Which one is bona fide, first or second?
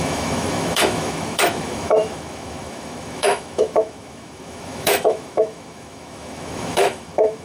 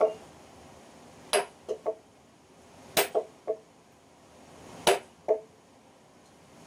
second